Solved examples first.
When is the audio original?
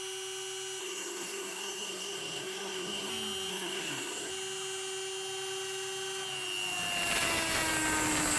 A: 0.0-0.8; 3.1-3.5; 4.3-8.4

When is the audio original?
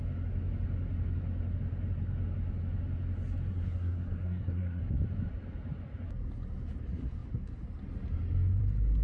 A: 0.0-3.5; 4.8-9.0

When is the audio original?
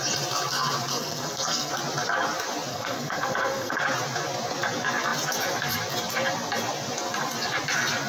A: 0.0-0.9; 1.7-2.7; 3.8-8.1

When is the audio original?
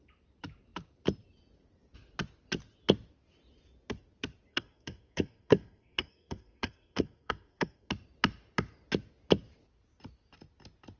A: 0.0-4.5; 7.9-11.0